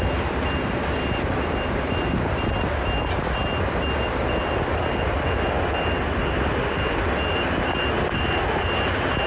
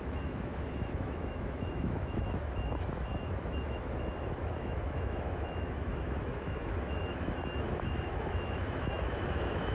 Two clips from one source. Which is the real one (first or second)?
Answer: first